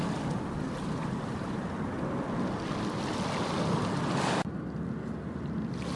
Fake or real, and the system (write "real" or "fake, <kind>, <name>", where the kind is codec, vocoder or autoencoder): real